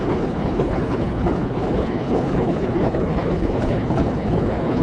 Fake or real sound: fake